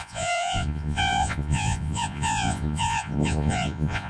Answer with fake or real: fake